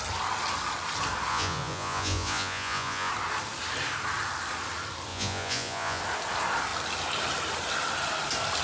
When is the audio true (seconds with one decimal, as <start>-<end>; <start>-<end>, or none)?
0.0-1.3; 3.1-5.1; 6.0-8.6